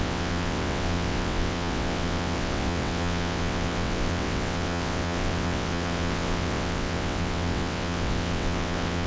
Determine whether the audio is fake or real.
fake